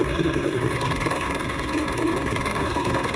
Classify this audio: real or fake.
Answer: fake